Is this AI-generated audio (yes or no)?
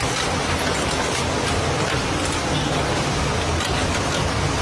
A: no